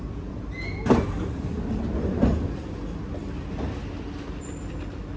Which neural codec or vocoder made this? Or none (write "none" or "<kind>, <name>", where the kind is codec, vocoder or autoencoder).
none